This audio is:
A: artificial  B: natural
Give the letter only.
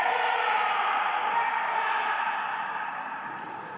B